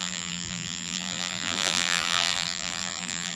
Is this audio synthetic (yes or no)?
yes